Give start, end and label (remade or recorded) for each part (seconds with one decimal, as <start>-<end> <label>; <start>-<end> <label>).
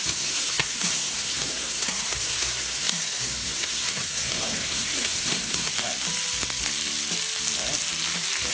0.0-5.7 remade; 5.7-8.5 recorded